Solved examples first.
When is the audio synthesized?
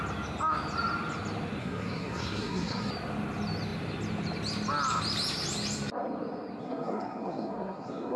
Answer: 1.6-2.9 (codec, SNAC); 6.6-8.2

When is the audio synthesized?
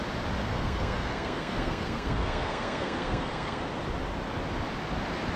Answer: 0.4-3.6 (codec, SNAC)